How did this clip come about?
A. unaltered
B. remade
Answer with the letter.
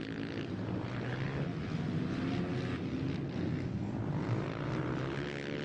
A